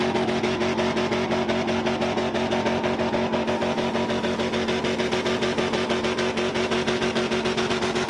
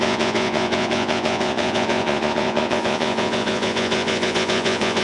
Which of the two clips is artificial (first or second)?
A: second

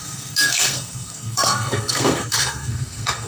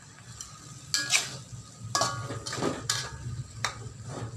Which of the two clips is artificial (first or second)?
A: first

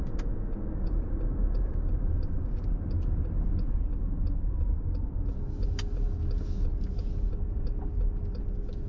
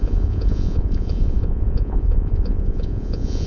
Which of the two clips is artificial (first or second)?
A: second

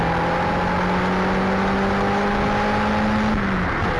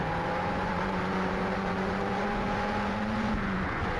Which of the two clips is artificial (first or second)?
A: second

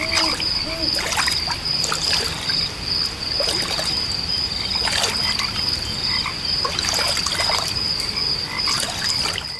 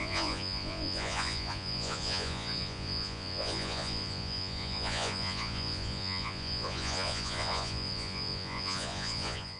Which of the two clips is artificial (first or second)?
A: second